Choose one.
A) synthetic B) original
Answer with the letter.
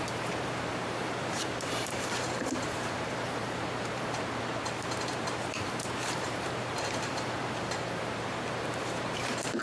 A